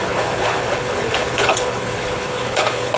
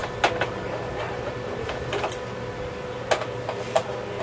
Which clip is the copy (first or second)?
first